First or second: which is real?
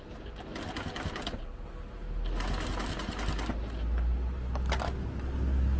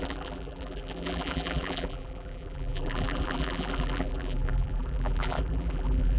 first